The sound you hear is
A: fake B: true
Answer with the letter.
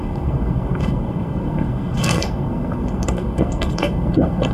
A